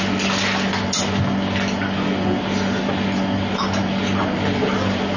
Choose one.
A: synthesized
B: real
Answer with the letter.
B